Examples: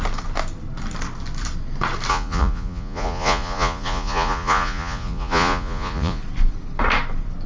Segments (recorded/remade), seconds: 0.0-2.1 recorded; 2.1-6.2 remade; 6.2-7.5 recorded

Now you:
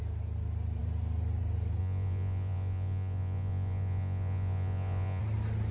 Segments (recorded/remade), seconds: 0.0-1.8 recorded; 1.8-5.2 remade; 5.2-5.7 recorded

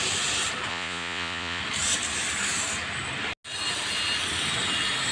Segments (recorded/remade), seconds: 0.0-0.7 recorded; 0.7-1.6 remade; 1.6-5.1 recorded

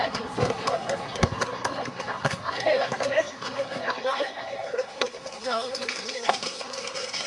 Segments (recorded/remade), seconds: 0.0-7.3 remade

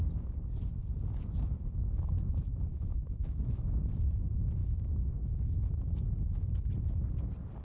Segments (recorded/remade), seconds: 0.0-2.7 recorded; 2.7-3.4 remade; 3.4-4.6 recorded; 4.6-5.2 remade; 5.2-7.6 recorded